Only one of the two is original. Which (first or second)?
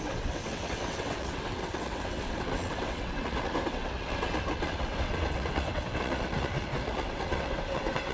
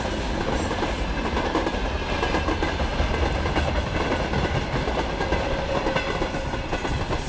second